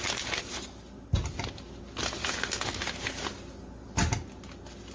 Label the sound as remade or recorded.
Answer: recorded